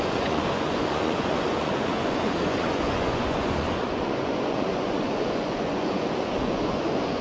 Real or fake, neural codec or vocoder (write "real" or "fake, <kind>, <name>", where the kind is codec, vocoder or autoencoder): fake, vocoder, Vocos